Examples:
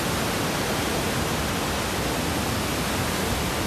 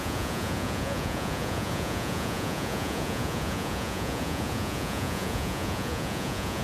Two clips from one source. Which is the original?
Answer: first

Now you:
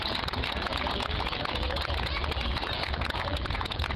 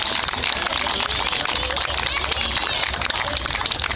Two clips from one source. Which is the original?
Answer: second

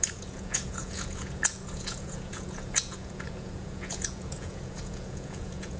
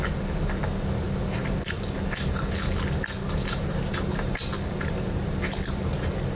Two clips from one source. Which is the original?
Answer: second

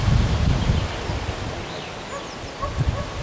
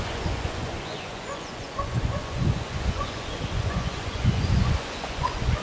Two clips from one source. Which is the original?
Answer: first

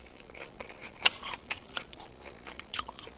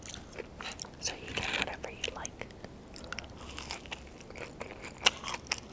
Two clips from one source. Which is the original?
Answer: second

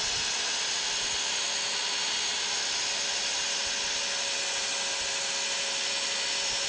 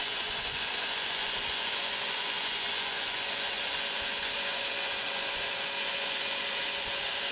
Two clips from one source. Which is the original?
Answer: first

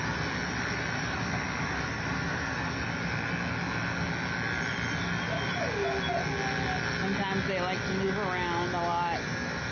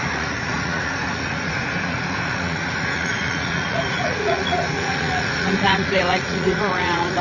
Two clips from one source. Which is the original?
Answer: first